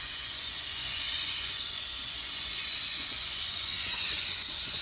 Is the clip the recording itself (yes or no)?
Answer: no